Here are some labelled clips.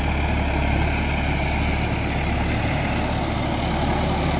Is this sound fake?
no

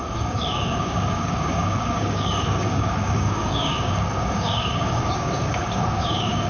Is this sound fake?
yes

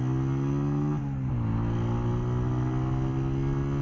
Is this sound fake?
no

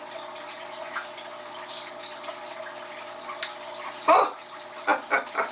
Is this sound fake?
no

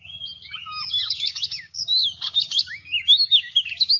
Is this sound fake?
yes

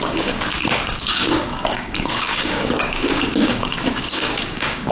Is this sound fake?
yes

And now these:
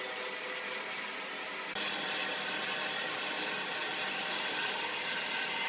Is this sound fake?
no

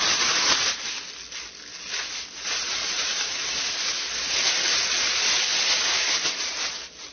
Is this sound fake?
no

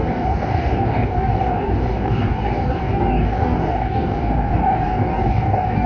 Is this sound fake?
yes